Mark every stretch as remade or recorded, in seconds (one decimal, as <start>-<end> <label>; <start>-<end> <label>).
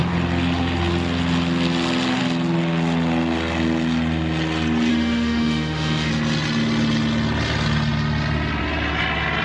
0.0-4.9 recorded; 4.9-6.1 remade; 6.1-9.4 recorded